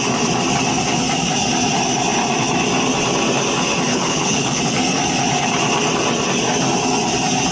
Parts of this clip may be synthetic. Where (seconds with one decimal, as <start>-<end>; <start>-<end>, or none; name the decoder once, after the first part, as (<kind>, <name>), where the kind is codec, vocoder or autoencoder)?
3.9-4.6 (codec, HILCodec)